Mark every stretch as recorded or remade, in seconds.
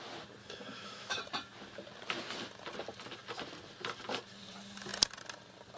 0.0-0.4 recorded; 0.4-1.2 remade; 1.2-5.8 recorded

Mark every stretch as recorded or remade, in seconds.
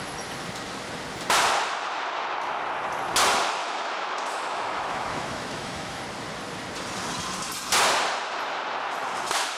0.0-3.6 recorded; 3.6-6.0 remade; 6.0-9.6 recorded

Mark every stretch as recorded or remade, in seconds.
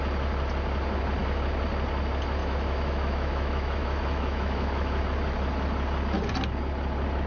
0.0-2.4 recorded; 2.4-5.0 remade; 5.0-7.3 recorded